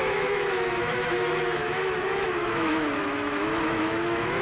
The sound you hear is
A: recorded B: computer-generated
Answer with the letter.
B